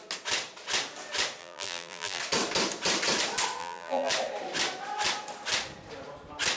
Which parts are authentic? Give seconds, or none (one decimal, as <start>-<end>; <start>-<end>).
0.0-1.4; 2.2-3.6; 4.1-6.6